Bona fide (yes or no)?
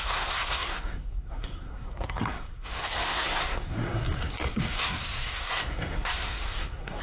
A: no